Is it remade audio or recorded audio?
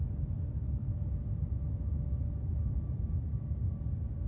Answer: recorded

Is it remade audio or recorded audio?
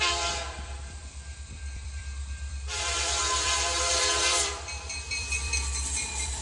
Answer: remade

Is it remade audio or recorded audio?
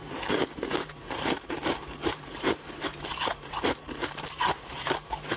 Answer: remade